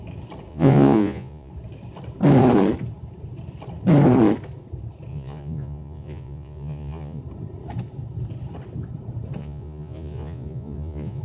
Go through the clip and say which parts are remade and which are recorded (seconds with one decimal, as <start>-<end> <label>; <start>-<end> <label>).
0.0-0.5 recorded; 0.5-1.5 remade; 1.5-5.1 recorded; 5.1-7.2 remade; 7.2-9.4 recorded; 9.4-11.2 remade